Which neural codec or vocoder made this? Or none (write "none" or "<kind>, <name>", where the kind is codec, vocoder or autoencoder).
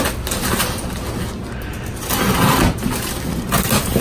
none